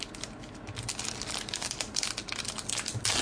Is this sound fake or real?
real